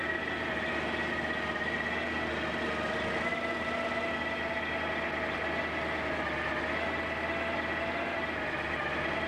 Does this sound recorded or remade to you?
recorded